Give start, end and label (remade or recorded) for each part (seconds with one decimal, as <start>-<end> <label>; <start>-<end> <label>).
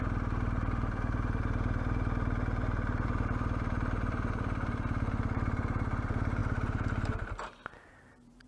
0.0-8.5 remade